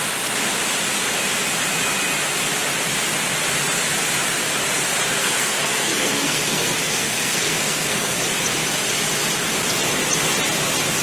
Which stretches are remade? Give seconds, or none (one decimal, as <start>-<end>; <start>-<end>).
5.2-8.2